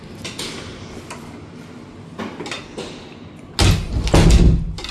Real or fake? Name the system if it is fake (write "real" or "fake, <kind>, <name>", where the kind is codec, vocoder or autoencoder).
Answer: real